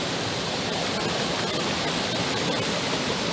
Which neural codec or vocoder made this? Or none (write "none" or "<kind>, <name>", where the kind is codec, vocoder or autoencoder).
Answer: none